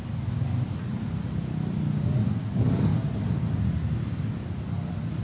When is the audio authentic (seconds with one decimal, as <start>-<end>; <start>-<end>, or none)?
0.0-2.9

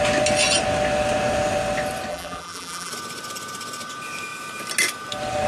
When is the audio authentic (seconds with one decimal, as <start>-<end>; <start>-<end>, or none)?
0.0-2.1; 2.9-5.5

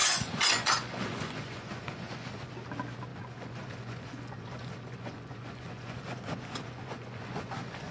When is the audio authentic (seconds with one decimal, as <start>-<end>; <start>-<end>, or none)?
2.5-3.1

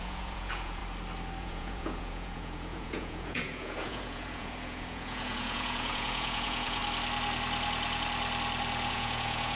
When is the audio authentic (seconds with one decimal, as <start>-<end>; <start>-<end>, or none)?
0.8-1.4; 6.8-8.9

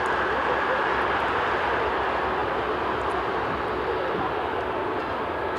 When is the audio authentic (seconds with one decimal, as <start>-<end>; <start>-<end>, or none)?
0.0-5.6